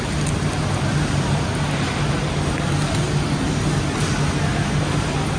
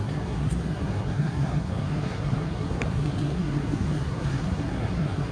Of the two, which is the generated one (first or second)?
second